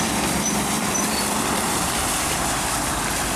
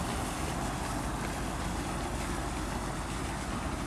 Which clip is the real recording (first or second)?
second